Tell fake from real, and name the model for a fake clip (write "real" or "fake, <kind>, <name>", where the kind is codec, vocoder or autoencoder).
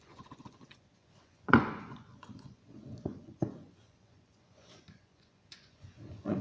fake, vocoder, Vocos